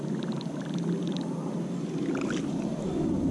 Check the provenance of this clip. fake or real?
real